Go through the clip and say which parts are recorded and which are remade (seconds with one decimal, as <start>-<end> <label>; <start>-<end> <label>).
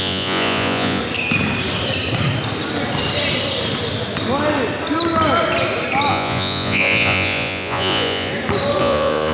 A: 0.0-1.0 remade; 1.0-6.1 recorded; 6.1-8.3 remade; 8.3-8.8 recorded; 8.8-9.3 remade